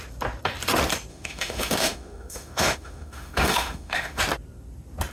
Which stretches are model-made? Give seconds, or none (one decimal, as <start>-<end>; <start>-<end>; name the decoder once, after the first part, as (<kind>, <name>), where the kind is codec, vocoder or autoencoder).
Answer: 1.1-4.2 (autoencoder, DAC-VAE)